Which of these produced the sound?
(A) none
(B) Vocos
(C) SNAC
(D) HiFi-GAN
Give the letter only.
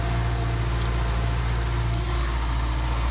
A